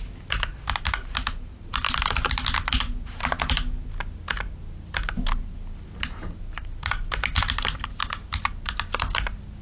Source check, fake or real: real